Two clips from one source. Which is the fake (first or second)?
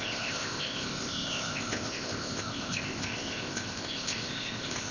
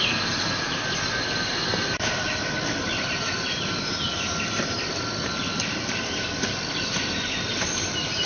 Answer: first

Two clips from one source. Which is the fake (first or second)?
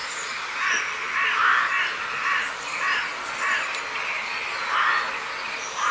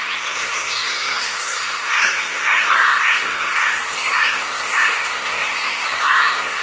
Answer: second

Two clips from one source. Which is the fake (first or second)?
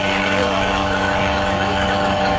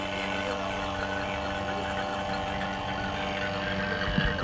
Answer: first